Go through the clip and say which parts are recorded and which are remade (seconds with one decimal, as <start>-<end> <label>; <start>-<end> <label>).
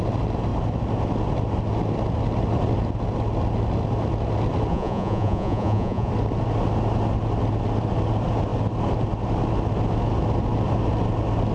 0.0-4.7 recorded; 4.7-6.1 remade; 6.1-11.5 recorded